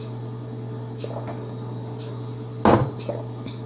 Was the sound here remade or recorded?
recorded